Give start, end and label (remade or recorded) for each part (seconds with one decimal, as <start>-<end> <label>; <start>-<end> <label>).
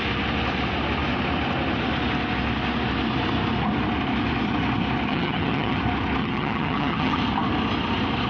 0.0-5.1 recorded; 5.1-5.8 remade; 5.8-6.2 recorded; 6.2-7.2 remade; 7.2-8.3 recorded